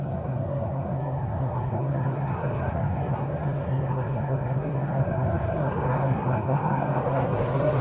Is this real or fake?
fake